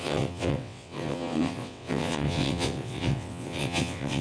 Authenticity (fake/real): fake